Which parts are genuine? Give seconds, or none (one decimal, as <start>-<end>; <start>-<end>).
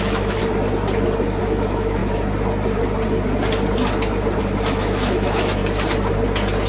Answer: 0.4-1.4; 2.0-4.4; 5.6-6.7